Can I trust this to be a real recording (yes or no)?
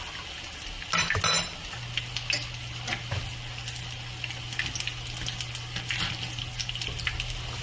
yes